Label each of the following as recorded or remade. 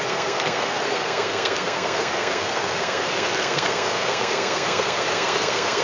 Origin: remade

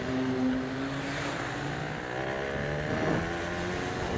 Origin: recorded